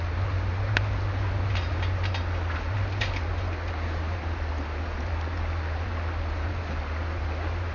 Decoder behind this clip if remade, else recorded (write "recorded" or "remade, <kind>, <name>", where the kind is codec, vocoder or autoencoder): recorded